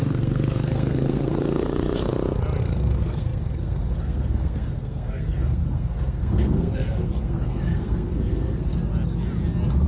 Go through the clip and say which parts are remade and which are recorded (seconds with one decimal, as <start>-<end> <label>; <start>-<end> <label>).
0.0-2.1 remade; 2.1-2.6 recorded; 2.6-8.7 remade; 8.7-9.9 recorded

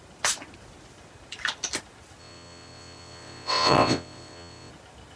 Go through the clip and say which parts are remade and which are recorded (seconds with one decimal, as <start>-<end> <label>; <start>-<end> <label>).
0.0-2.2 recorded; 2.2-4.7 remade; 4.7-5.2 recorded

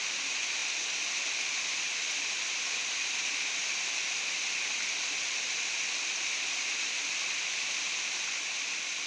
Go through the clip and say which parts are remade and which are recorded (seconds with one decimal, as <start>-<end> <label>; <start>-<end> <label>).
0.0-9.1 recorded

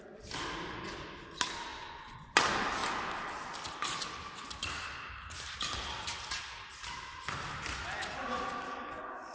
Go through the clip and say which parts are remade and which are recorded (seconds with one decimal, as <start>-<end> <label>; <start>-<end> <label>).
0.0-1.7 recorded; 1.7-2.3 remade; 2.3-9.3 recorded

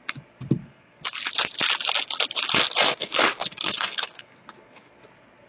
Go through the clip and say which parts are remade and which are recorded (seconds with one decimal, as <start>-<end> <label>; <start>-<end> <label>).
0.0-0.6 recorded; 0.6-1.2 remade; 1.2-3.0 recorded; 3.0-4.9 remade; 4.9-5.5 recorded

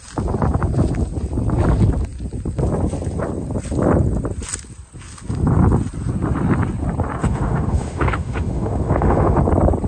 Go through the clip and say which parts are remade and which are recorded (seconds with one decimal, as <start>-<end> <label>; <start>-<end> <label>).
0.0-7.2 recorded; 7.2-9.4 remade; 9.4-9.9 recorded